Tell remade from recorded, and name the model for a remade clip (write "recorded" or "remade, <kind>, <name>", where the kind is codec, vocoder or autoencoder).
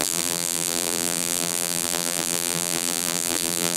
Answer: remade, vocoder, BigVGAN v2